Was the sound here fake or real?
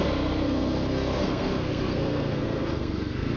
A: fake